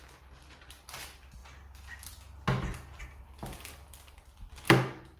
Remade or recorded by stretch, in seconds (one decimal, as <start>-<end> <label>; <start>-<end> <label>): 0.0-5.2 recorded